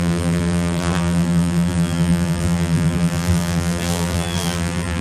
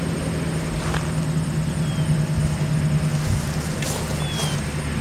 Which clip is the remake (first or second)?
first